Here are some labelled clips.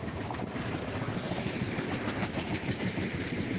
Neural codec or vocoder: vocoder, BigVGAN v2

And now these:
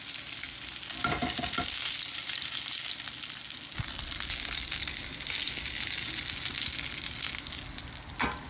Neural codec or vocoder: none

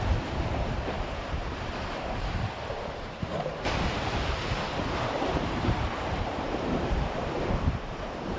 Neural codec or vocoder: vocoder, BigVGAN v2